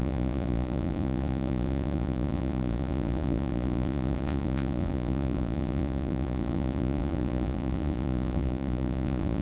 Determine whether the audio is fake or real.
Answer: fake